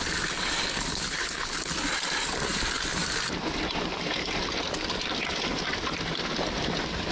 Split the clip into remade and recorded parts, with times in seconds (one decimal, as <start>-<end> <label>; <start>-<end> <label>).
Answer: 0.0-0.9 recorded; 0.9-1.7 remade; 1.7-7.1 recorded